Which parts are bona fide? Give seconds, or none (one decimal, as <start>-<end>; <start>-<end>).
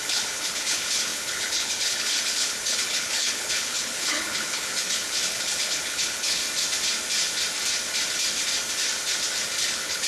6.4-9.6